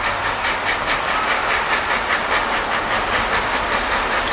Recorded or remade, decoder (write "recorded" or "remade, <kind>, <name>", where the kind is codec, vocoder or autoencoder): recorded